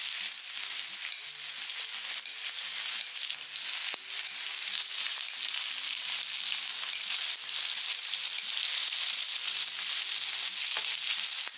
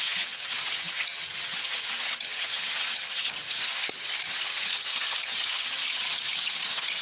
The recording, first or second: first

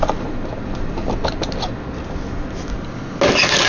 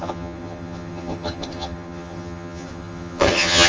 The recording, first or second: first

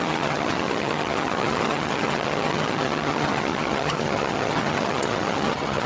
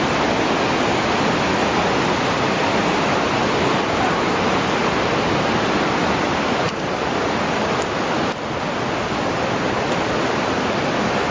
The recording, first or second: second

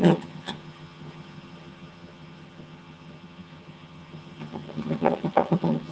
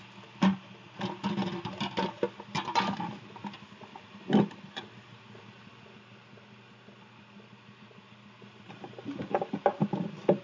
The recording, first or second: second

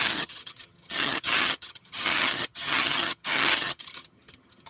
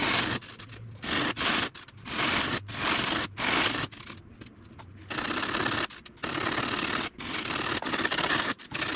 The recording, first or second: second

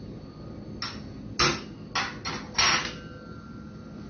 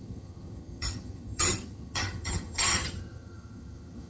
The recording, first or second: first